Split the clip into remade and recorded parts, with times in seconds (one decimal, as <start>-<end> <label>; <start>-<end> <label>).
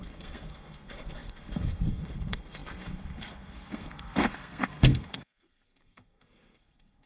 0.0-7.1 remade